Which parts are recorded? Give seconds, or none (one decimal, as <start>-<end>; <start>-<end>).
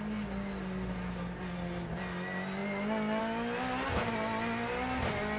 0.0-5.4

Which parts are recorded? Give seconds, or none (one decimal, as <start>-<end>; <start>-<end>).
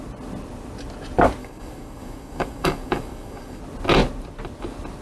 0.0-1.4; 3.6-5.0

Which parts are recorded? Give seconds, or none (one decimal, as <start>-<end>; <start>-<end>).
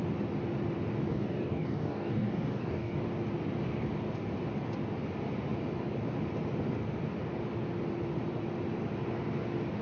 0.0-1.1; 3.0-9.8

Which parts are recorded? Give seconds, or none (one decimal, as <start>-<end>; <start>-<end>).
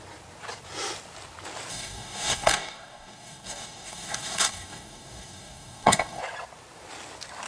0.0-1.7; 6.2-7.5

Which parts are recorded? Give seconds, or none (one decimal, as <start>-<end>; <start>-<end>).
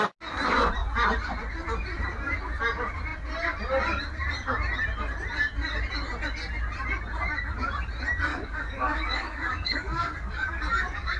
0.0-8.3